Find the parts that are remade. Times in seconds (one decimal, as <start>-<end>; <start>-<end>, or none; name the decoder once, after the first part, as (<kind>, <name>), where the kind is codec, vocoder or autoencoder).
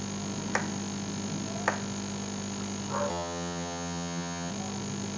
3.1-4.5 (vocoder, HiFi-GAN)